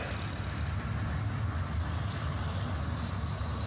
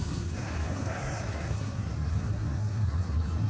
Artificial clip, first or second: second